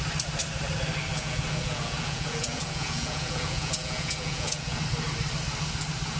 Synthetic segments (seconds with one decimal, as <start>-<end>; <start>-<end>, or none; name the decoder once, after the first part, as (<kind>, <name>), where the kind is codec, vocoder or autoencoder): 1.1-4.8 (vocoder, Vocos)